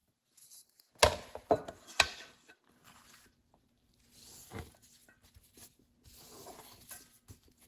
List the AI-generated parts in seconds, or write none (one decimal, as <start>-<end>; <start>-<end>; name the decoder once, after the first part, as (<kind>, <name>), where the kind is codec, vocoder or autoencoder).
none